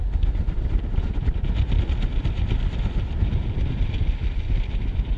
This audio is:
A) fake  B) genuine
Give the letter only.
B